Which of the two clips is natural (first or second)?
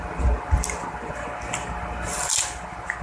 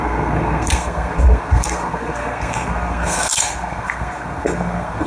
first